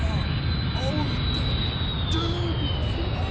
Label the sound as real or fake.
real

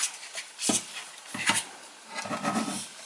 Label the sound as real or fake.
fake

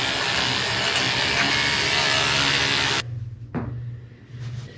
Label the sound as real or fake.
real